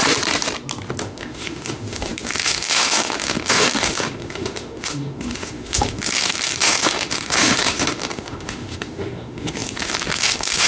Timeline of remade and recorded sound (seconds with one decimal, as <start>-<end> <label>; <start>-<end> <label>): 0.0-1.0 recorded; 1.0-10.7 remade